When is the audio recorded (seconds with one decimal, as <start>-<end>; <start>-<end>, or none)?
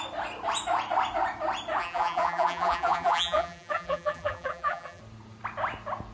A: 0.0-1.8; 5.0-6.1